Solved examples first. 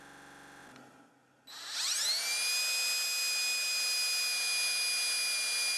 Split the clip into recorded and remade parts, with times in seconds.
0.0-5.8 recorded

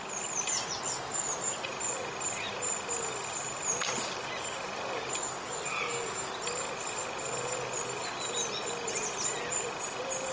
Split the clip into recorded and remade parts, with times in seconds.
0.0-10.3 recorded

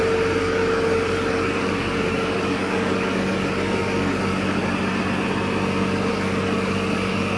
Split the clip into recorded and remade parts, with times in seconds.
0.0-0.4 recorded; 0.4-4.7 remade; 4.7-6.1 recorded; 6.1-7.4 remade